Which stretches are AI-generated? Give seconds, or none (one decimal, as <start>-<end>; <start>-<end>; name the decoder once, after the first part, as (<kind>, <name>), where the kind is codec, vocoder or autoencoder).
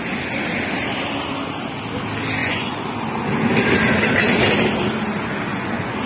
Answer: 2.4-2.9 (vocoder, Vocos); 5.5-6.1